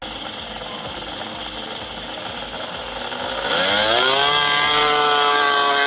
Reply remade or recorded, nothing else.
recorded